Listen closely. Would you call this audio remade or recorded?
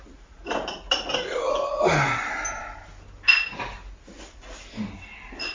recorded